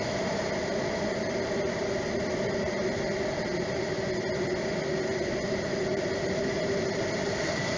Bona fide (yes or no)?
yes